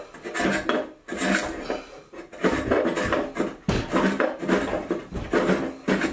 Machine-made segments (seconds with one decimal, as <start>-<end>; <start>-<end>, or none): none